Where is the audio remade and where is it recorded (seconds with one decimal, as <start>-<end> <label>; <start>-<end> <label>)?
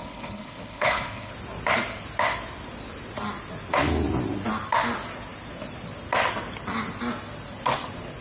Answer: 0.0-1.3 remade; 1.3-8.2 recorded